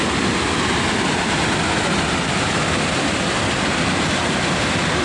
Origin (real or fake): real